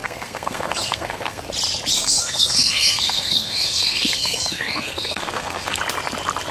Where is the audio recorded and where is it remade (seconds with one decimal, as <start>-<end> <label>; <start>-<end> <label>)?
0.0-1.4 remade; 1.4-1.9 recorded; 1.9-5.8 remade; 5.8-6.5 recorded